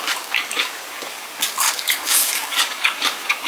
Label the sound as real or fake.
fake